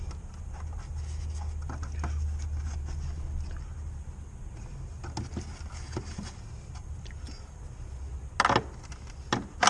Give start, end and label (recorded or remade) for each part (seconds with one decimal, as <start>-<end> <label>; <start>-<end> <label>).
0.0-6.8 recorded; 6.8-7.6 remade; 7.6-9.7 recorded